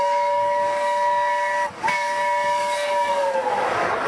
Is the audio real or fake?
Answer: fake